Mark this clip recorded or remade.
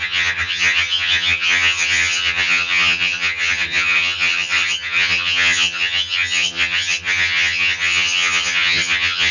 remade